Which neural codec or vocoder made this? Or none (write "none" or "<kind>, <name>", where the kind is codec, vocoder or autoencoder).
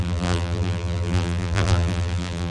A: vocoder, BigVGAN v2